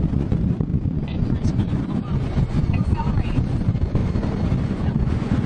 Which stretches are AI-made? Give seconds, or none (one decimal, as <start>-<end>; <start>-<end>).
0.0-4.0; 4.7-5.5